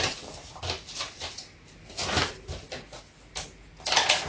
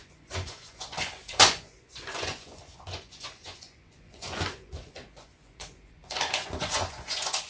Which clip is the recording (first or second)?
first